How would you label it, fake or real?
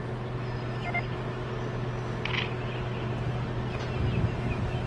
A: real